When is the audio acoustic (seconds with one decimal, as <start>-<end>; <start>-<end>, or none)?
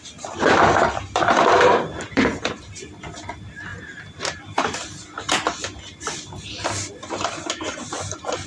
0.0-8.5